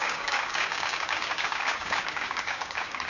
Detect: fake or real fake